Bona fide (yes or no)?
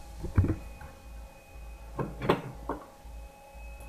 yes